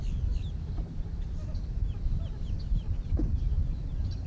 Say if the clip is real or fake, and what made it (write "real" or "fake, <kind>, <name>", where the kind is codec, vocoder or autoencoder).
real